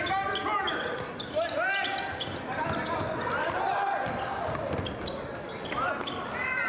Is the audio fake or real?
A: real